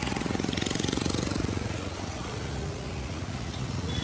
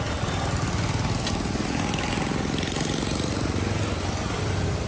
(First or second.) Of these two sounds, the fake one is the first